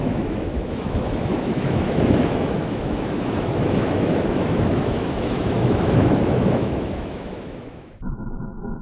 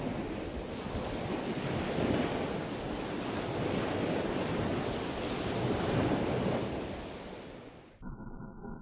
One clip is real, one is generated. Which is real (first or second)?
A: second